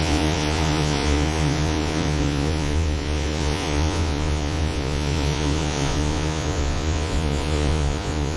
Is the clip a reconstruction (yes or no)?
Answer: yes